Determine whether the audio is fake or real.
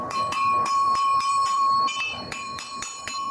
fake